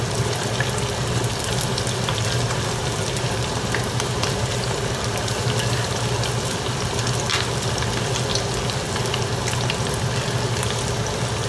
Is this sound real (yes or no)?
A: yes